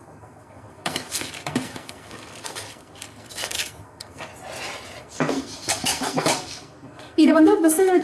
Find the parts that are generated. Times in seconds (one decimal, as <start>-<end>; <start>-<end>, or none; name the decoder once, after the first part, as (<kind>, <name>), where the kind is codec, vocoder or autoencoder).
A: 0.0-4.3 (codec, SNAC); 5.0-8.0